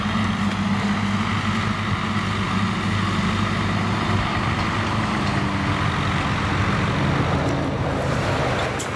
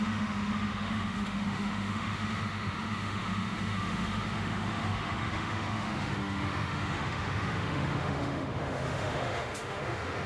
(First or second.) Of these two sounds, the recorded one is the first